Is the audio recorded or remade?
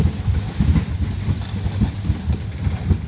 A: recorded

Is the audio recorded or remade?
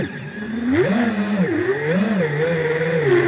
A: recorded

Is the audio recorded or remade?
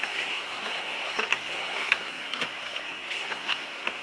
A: remade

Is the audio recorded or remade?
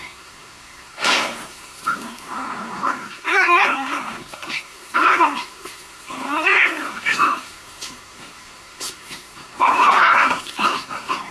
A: remade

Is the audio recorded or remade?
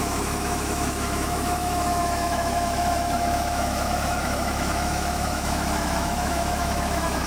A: remade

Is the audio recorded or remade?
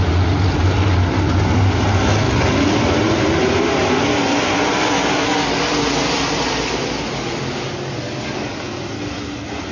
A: recorded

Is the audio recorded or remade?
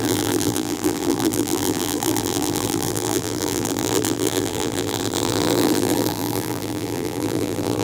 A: remade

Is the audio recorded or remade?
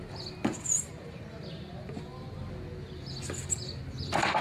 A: recorded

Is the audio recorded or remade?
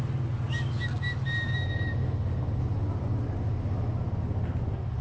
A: recorded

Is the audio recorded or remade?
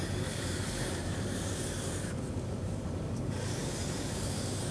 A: remade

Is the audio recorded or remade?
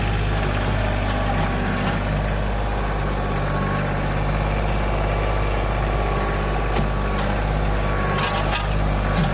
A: recorded